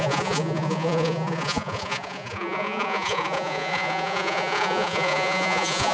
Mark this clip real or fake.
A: fake